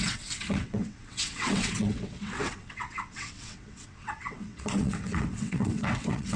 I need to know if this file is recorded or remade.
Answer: remade